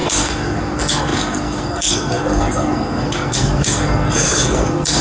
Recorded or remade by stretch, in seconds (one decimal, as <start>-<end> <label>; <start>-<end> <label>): 0.0-5.0 remade